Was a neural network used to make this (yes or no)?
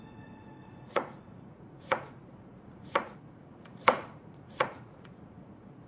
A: yes